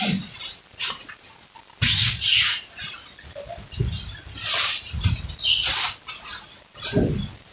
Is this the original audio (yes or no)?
yes